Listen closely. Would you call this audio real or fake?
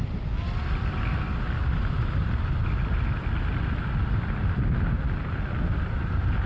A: real